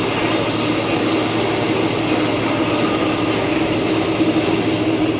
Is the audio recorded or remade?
recorded